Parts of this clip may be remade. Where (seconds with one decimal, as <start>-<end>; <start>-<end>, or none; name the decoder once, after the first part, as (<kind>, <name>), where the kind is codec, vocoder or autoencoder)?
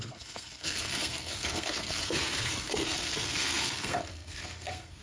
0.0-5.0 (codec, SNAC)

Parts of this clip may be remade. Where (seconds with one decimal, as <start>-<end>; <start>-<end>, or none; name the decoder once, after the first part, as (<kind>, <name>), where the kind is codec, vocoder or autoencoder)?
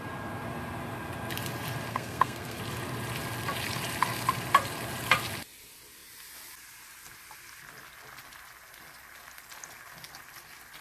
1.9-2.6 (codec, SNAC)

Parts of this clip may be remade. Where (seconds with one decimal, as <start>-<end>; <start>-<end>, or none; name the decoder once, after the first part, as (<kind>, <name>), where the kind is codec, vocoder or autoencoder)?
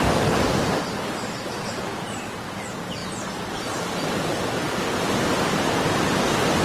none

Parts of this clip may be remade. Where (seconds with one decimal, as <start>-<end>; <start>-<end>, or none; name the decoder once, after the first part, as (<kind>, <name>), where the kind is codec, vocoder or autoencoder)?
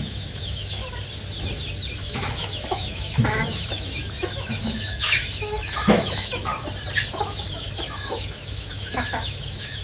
0.0-0.8 (autoencoder, DAC-VAE); 2.0-6.5; 7.1-9.8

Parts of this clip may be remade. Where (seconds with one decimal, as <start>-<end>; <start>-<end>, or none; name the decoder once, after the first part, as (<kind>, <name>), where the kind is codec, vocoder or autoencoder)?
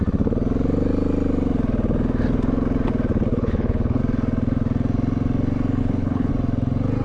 3.3-4.0 (codec, HILCodec); 5.8-6.3